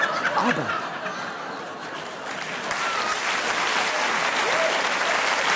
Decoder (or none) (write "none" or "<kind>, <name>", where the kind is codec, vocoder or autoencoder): none